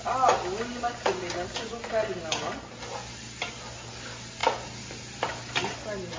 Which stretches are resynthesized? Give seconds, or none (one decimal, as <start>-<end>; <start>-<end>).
none